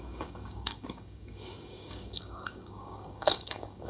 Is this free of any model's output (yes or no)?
no